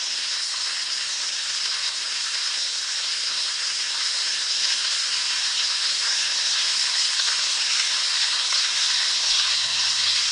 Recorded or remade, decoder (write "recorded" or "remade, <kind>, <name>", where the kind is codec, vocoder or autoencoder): remade, codec, SNAC